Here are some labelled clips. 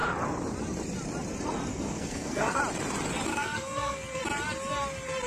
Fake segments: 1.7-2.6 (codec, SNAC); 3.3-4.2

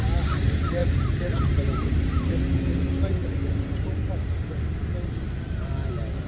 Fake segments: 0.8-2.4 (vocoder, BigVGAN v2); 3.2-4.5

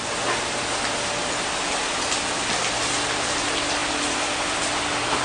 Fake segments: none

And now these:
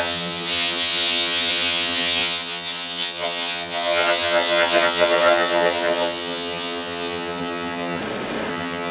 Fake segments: 0.0-8.0 (vocoder, HiFi-GAN); 8.5-8.9

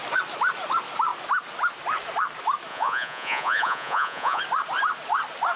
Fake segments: 2.7-4.4 (vocoder, Vocos)

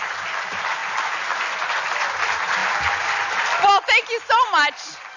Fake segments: none